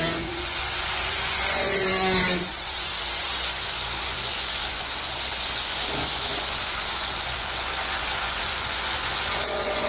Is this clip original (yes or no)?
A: no